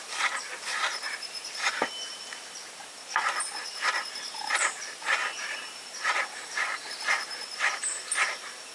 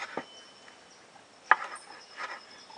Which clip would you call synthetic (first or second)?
first